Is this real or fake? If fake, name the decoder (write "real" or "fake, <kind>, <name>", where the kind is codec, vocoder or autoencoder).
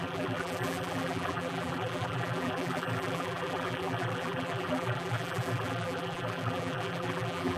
fake, vocoder, BigVGAN v2